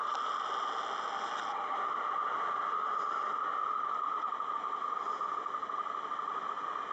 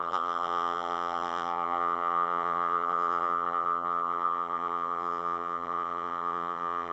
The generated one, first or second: second